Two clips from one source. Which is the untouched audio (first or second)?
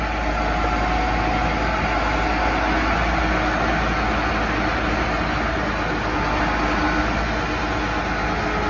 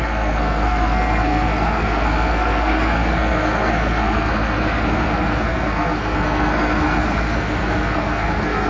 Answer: first